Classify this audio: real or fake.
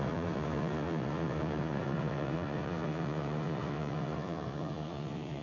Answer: fake